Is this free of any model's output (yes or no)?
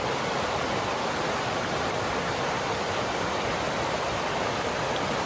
yes